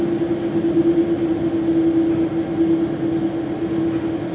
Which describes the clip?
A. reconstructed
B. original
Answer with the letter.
B